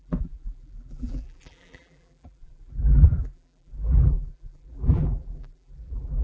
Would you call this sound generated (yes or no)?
yes